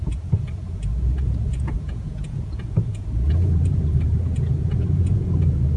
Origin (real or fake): fake